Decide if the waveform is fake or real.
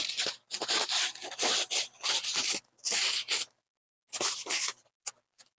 real